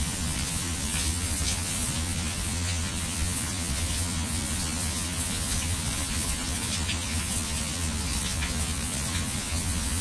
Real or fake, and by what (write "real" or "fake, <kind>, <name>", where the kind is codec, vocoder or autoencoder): fake, vocoder, Vocos